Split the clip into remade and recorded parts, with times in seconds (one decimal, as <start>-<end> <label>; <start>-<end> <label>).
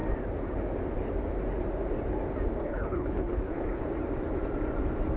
0.0-2.6 recorded; 2.6-3.8 remade; 3.8-5.2 recorded